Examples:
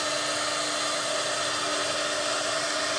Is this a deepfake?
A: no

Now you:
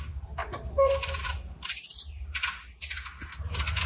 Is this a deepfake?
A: no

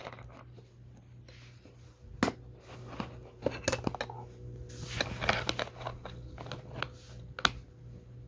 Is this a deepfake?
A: no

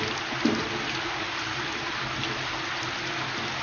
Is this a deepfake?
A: no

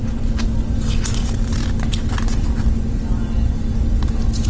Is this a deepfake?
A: no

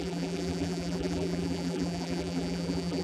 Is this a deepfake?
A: yes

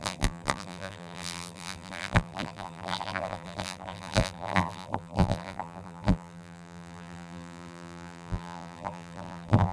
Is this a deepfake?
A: yes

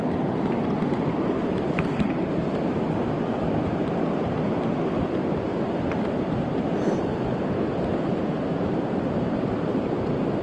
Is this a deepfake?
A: yes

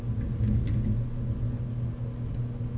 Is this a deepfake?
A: no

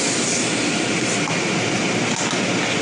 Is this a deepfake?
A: no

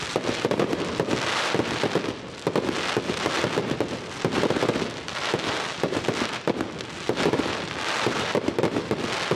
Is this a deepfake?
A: no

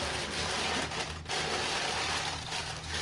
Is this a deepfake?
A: no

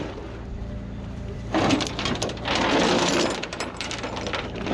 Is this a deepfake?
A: yes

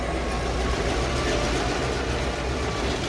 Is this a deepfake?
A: no